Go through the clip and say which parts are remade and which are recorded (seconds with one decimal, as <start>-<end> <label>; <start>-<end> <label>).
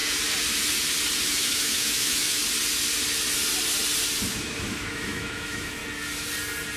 0.0-1.2 recorded; 1.2-2.4 remade; 2.4-4.4 recorded; 4.4-5.8 remade; 5.8-6.8 recorded